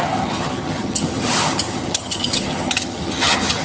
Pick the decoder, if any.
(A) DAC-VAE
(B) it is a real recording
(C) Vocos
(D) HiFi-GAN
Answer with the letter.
D